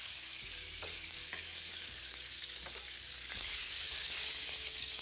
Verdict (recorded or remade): remade